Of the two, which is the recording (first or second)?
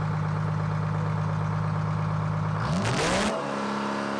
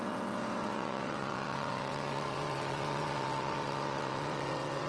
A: first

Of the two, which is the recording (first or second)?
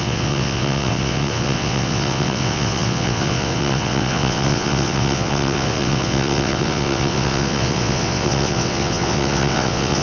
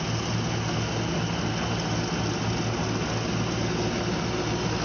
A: second